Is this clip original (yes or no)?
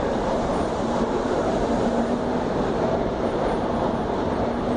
no